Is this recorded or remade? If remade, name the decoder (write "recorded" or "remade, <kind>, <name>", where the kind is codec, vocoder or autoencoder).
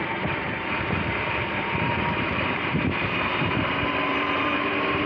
remade, vocoder, BigVGAN v2